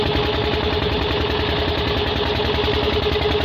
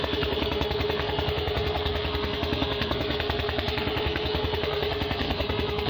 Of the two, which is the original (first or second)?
first